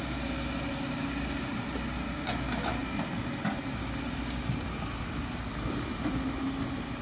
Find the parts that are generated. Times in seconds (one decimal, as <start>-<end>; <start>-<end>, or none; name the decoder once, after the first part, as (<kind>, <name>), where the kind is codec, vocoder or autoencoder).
none